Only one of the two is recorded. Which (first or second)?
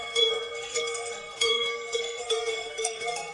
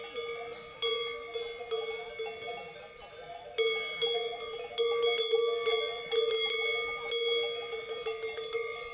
second